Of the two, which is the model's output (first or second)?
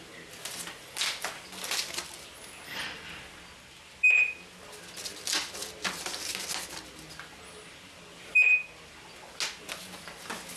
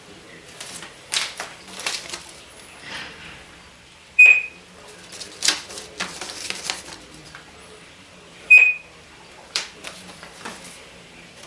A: second